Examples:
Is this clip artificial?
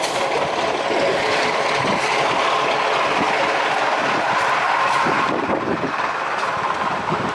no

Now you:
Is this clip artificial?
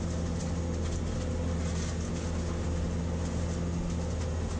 no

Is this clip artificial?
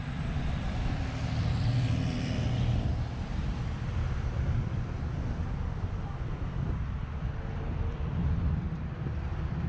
yes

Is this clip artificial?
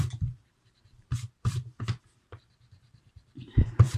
yes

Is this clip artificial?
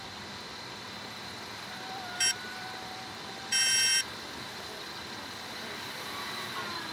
yes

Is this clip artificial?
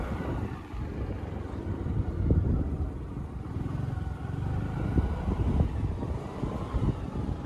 no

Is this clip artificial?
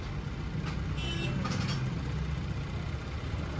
no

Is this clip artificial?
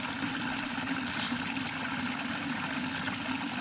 yes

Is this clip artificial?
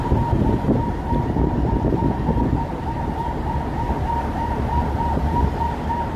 no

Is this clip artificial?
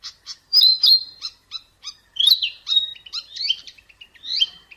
yes